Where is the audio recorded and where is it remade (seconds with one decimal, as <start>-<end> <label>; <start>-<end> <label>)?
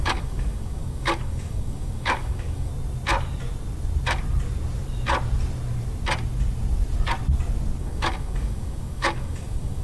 0.0-2.7 remade; 2.7-7.8 recorded; 7.8-9.8 remade